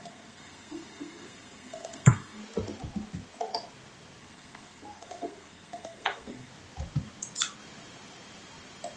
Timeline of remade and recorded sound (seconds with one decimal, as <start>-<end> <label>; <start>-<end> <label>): 0.0-2.4 remade; 2.4-4.2 recorded; 4.2-6.5 remade; 6.5-9.0 recorded